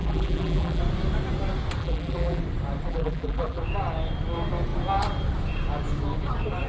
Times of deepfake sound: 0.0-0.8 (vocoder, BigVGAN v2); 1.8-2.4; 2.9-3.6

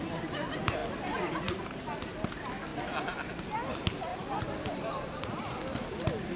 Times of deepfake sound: 0.8-1.8 (vocoder, BigVGAN v2); 2.7-3.3; 4.1-6.4

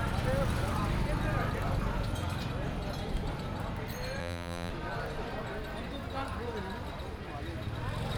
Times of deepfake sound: 4.2-4.7 (vocoder, BigVGAN v2)

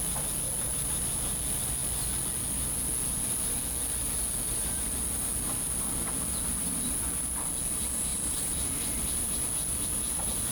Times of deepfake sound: none

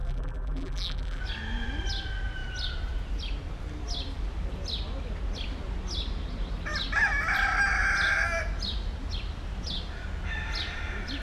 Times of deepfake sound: 0.0-1.2 (vocoder, BigVGAN v2)

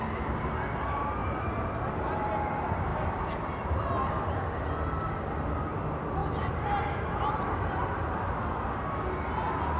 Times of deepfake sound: 2.9-3.9 (vocoder, BigVGAN v2)